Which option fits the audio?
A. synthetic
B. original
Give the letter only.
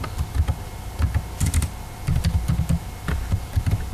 B